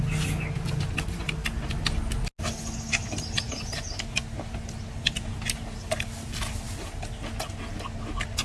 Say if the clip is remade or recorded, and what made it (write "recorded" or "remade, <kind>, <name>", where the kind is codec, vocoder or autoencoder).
recorded